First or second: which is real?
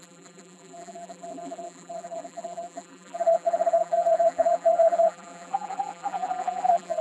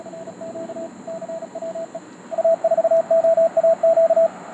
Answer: second